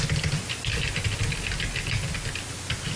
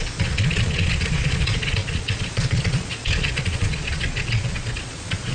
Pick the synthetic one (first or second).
second